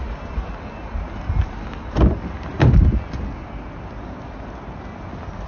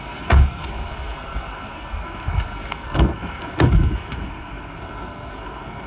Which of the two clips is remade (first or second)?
second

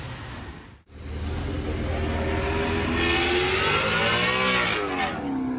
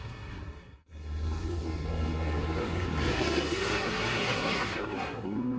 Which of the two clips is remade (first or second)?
second